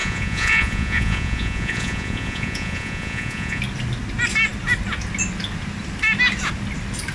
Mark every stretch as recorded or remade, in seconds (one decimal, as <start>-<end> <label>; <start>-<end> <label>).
0.0-3.6 remade; 3.6-7.1 recorded